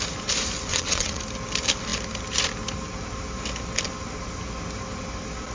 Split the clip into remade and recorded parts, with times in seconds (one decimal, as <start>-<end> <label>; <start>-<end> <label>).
0.0-0.7 recorded; 0.7-1.2 remade; 1.2-5.5 recorded